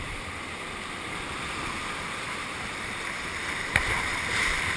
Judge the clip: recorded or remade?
recorded